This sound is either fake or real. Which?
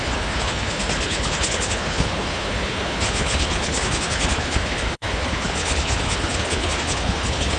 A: fake